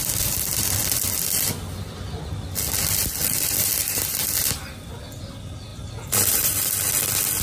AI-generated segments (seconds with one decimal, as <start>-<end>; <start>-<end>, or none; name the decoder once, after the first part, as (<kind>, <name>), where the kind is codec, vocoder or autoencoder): 3.6-4.3 (vocoder, BigVGAN v2); 5.7-6.7